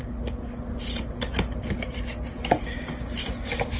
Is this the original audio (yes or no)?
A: yes